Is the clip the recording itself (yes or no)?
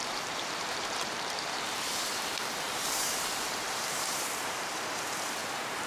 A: no